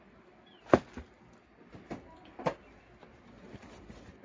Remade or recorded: recorded